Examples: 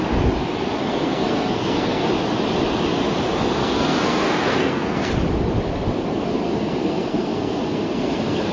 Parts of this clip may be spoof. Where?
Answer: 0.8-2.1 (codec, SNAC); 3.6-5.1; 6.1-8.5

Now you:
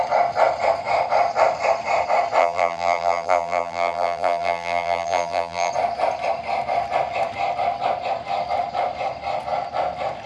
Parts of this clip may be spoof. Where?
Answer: 2.4-5.7 (vocoder, BigVGAN v2)

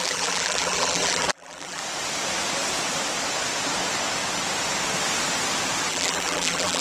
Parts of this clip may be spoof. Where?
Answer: 0.0-1.8 (vocoder, BigVGAN v2); 5.9-6.8

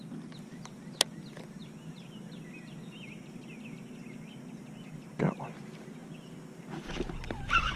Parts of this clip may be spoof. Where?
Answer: none

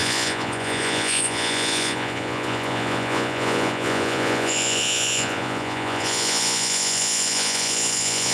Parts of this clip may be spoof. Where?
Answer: 0.0-8.3 (vocoder, Vocos)

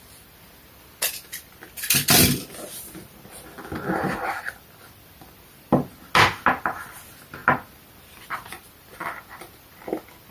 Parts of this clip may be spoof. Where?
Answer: none

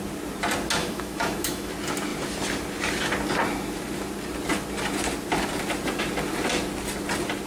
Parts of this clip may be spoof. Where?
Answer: 0.8-1.7 (autoencoder, DAC-VAE)